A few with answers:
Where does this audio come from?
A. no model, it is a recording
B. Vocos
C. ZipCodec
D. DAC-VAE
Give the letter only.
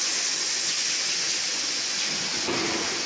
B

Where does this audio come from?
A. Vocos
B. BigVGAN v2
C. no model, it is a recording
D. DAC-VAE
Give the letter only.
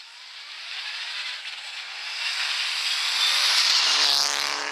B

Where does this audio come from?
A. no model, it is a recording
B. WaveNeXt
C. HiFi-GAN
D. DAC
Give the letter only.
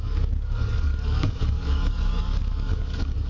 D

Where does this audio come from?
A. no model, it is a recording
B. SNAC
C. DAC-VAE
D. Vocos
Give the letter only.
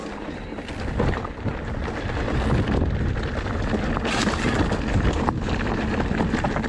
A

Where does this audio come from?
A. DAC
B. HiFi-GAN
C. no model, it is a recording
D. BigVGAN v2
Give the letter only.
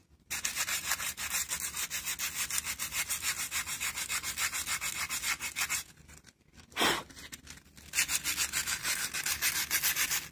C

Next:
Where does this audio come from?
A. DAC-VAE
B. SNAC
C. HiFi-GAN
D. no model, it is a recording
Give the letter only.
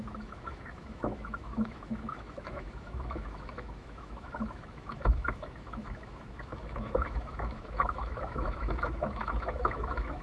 A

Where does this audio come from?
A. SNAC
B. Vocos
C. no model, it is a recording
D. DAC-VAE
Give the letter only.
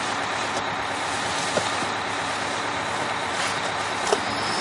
C